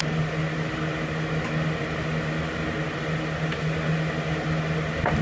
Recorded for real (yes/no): yes